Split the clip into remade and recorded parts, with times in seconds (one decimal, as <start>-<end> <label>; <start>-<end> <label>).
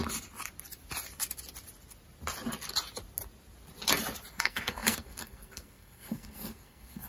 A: 0.0-4.3 recorded; 4.3-7.1 remade